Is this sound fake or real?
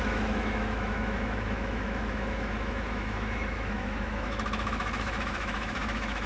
fake